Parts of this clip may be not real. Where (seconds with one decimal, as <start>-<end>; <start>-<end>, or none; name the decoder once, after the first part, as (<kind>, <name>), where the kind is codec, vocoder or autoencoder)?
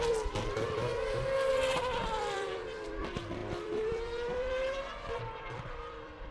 0.0-0.9 (vocoder, BigVGAN v2); 1.5-6.3